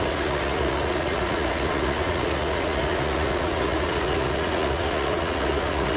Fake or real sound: fake